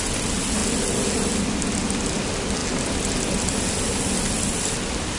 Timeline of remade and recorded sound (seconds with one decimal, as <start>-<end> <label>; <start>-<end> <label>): 0.0-5.2 recorded